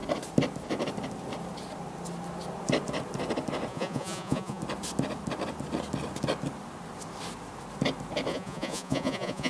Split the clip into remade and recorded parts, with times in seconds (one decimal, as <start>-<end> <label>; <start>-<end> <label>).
0.0-3.7 recorded; 3.7-4.6 remade; 4.6-8.3 recorded; 8.3-9.5 remade

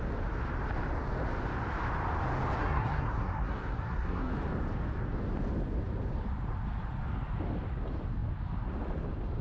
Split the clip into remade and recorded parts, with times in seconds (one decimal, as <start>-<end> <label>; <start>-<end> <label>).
0.0-2.6 recorded; 2.6-4.3 remade; 4.3-9.4 recorded

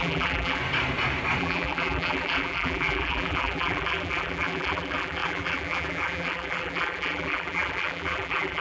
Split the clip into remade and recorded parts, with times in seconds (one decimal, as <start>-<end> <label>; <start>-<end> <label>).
0.0-0.6 remade; 0.6-1.4 recorded; 1.4-8.6 remade

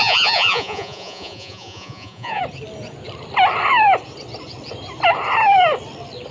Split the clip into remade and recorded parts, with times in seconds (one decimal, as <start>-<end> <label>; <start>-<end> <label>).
0.0-2.4 remade; 2.4-6.3 recorded